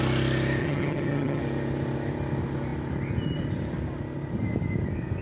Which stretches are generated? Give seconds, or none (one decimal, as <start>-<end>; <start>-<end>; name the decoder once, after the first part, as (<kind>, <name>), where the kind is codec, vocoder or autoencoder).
0.6-1.4 (vocoder, HiFi-GAN)